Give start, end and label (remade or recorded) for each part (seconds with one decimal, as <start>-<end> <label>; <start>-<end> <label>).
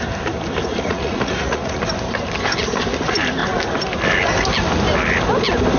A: 0.0-0.7 recorded; 0.7-1.8 remade; 1.8-5.8 recorded